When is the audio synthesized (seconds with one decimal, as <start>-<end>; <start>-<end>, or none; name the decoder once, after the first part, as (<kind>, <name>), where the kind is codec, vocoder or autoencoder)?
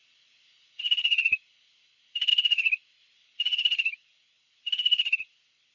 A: none